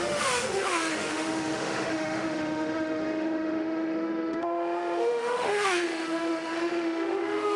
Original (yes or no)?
no